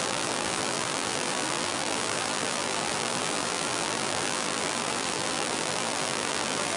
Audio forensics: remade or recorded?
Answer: remade